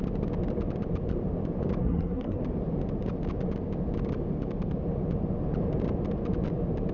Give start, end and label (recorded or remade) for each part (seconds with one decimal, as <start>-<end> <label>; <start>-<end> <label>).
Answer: 0.0-1.8 recorded; 1.8-2.4 remade; 2.4-6.9 recorded